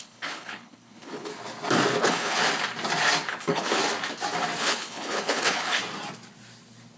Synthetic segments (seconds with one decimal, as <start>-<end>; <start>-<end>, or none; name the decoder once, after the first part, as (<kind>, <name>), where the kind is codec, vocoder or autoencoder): 0.0-1.3 (codec, HILCodec); 2.0-2.4; 3.3-3.8; 4.6-5.8